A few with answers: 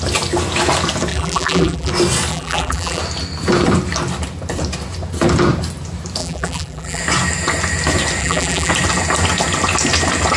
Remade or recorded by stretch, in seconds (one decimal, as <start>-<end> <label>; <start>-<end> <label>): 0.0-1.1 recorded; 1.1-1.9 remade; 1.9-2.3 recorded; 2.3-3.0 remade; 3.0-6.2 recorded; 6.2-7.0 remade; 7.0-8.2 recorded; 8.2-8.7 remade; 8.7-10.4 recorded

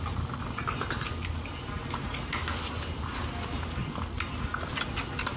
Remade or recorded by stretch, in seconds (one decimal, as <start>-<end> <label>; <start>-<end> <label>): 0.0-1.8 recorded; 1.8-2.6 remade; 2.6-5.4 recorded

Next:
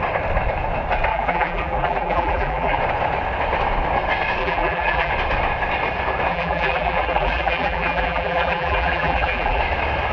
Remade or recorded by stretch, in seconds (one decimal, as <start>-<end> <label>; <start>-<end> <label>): 0.0-1.1 recorded; 1.1-2.8 remade; 2.8-4.4 recorded; 4.4-5.1 remade; 5.1-6.3 recorded; 6.3-9.6 remade; 9.6-10.1 recorded

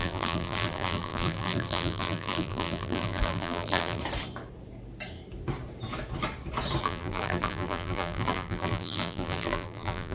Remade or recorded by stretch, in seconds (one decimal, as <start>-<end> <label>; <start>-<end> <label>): 0.0-4.0 remade; 4.0-6.8 recorded; 6.8-10.1 remade

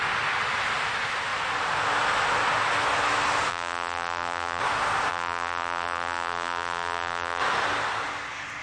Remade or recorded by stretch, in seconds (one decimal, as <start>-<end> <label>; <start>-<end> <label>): 0.0-3.5 recorded; 3.5-4.6 remade; 4.6-5.1 recorded; 5.1-7.4 remade; 7.4-8.6 recorded